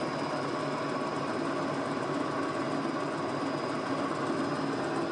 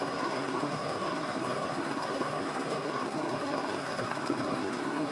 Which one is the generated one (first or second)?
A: second